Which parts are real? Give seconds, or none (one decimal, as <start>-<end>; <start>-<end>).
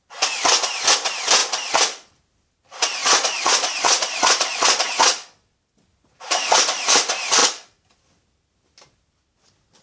0.0-3.0; 5.0-9.8